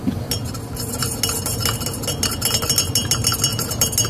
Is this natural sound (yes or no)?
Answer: yes